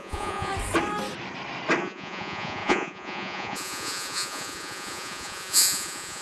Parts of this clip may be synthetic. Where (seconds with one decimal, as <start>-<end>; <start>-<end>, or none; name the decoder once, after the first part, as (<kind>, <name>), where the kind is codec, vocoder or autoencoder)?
0.0-0.5 (vocoder, Vocos); 1.8-6.2